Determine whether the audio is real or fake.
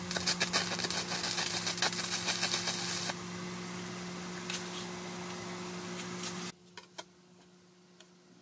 real